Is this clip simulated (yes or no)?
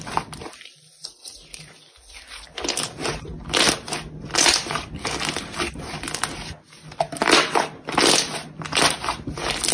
no